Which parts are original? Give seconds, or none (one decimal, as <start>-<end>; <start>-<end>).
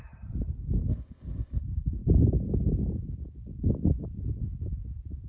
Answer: 0.0-0.9; 1.6-5.3